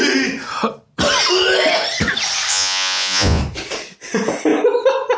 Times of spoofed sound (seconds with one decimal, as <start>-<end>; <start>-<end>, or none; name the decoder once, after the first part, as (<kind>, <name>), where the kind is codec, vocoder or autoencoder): 2.5-3.4 (vocoder, Vocos)